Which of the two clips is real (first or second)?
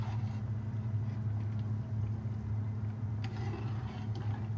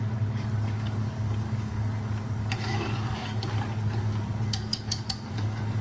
first